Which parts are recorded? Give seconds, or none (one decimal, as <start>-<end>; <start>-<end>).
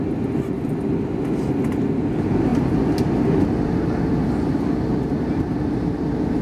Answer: 0.0-6.4